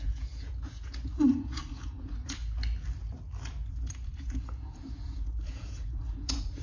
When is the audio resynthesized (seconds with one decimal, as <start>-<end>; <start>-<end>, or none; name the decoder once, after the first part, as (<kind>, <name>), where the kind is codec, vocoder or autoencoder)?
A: 0.0-2.4 (vocoder, Vocos); 3.7-6.6